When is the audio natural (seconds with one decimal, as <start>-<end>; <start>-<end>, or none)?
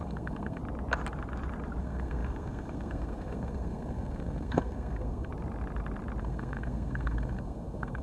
0.6-1.8; 5.3-6.2